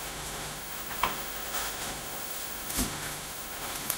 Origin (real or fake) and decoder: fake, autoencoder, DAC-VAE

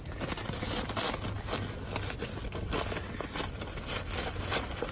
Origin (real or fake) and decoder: real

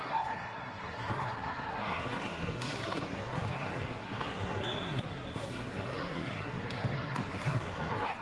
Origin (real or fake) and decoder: fake, codec, SNAC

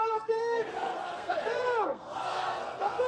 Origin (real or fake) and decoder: fake, codec, SNAC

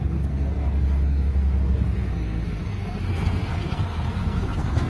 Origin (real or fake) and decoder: fake, codec, SNAC